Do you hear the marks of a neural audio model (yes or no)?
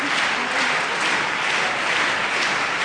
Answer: no